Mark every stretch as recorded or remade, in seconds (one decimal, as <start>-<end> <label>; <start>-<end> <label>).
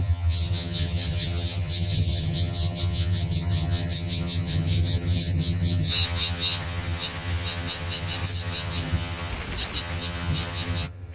0.0-9.3 remade; 9.3-9.8 recorded; 9.8-11.1 remade